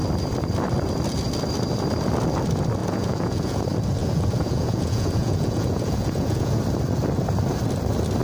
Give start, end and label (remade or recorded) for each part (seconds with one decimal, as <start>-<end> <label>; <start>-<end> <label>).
0.0-2.8 recorded; 2.8-3.6 remade; 3.6-4.0 recorded; 4.0-6.6 remade; 6.6-8.2 recorded